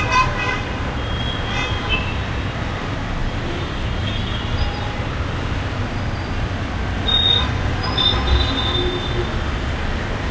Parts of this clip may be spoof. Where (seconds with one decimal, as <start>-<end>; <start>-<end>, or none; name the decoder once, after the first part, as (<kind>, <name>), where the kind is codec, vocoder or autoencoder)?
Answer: 7.1-7.7 (vocoder, Vocos)